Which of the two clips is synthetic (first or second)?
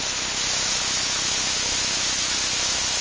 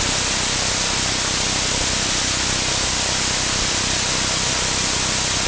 first